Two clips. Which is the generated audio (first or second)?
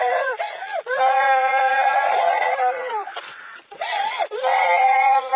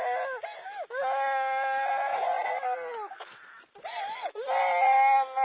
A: first